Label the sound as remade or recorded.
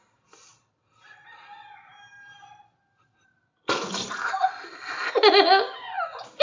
recorded